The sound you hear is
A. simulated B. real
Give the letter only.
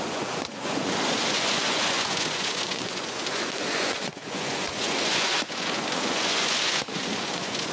A